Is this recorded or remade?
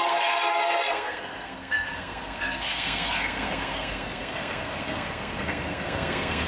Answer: remade